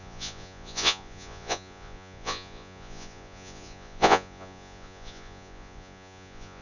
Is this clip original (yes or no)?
no